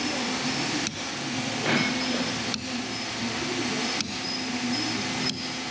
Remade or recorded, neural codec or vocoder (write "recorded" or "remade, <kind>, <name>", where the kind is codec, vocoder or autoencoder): recorded